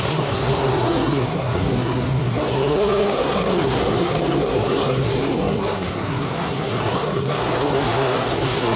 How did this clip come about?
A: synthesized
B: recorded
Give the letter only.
A